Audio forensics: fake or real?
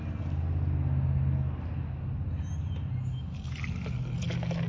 real